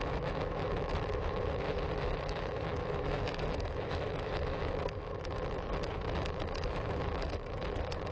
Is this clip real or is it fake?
fake